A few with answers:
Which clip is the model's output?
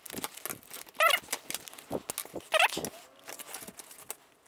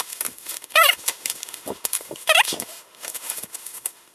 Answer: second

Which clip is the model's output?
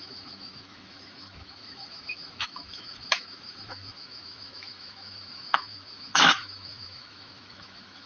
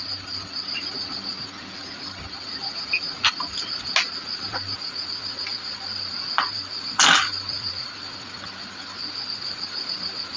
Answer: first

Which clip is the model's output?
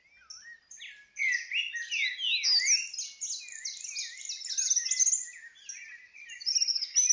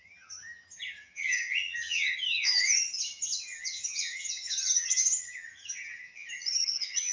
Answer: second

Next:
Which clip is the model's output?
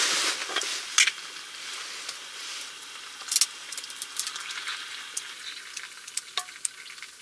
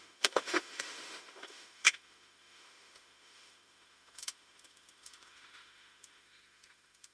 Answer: second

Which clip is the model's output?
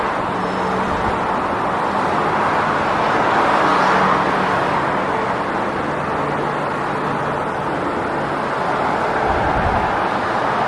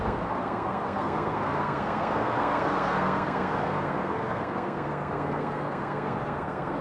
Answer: second